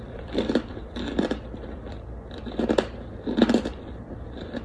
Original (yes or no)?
no